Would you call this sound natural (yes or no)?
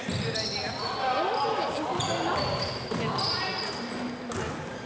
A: yes